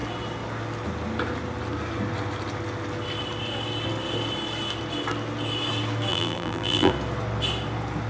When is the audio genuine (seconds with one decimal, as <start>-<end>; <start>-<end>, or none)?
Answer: 0.0-6.1; 6.9-8.1